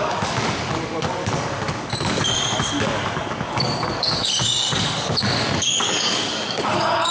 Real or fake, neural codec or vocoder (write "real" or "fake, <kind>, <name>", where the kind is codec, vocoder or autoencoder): fake, codec, DAC